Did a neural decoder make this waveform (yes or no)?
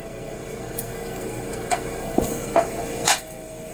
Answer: yes